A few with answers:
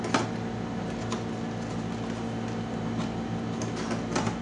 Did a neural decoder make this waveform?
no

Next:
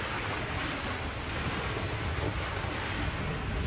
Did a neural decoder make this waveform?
no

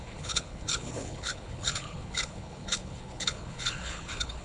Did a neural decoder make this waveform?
yes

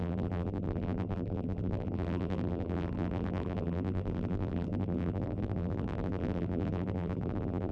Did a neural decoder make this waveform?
yes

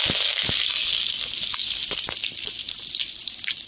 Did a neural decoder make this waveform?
no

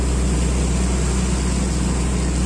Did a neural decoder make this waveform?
no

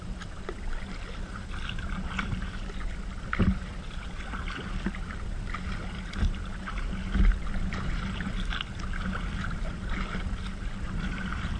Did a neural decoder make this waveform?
no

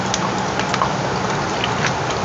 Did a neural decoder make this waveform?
no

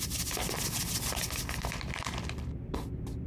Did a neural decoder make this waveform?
yes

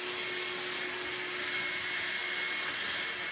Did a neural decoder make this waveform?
no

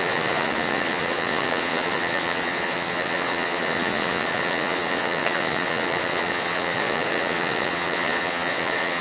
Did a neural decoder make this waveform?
yes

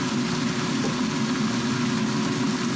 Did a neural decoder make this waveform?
no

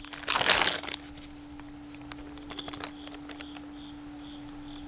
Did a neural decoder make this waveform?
no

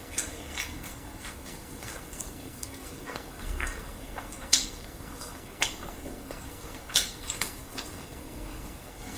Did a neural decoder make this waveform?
yes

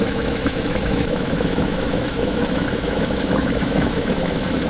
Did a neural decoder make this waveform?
yes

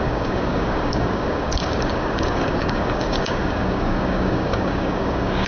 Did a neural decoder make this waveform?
yes